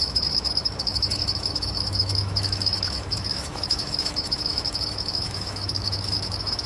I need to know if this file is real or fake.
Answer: fake